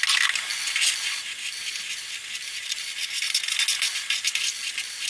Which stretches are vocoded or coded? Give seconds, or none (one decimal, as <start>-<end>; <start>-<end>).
none